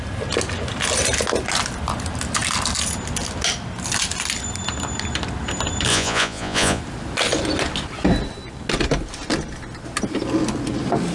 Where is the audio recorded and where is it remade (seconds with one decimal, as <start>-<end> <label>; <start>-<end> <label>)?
0.0-5.9 recorded; 5.9-6.8 remade; 6.8-11.1 recorded